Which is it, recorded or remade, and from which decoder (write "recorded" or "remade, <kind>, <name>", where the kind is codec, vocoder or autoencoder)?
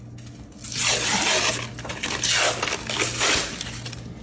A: recorded